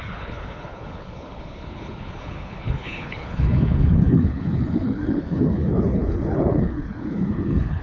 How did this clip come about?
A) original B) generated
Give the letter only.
B